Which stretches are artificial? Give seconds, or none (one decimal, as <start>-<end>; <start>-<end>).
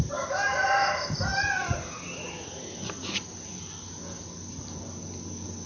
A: none